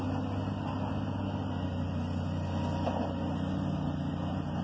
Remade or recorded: recorded